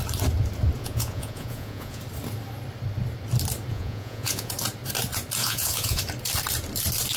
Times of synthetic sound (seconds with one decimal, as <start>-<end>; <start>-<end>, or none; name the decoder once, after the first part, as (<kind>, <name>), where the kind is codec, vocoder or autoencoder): 0.8-2.0 (vocoder, Vocos); 3.7-4.5; 5.4-6.0